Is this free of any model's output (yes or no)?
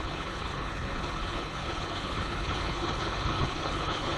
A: no